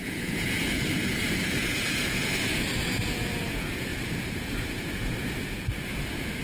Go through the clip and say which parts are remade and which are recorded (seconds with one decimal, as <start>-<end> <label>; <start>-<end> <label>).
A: 0.0-6.4 remade